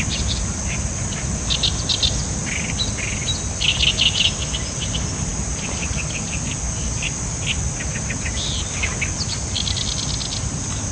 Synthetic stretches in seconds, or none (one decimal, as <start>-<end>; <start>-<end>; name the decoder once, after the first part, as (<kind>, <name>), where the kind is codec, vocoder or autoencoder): none